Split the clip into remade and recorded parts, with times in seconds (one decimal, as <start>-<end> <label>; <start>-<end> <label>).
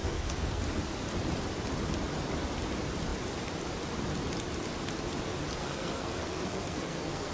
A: 0.0-0.6 remade; 0.6-5.6 recorded; 5.6-7.3 remade